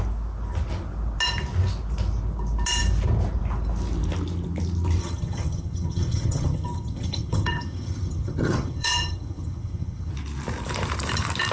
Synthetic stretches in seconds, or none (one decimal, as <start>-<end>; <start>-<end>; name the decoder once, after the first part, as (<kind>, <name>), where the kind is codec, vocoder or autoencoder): 5.0-10.1 (vocoder, HiFi-GAN)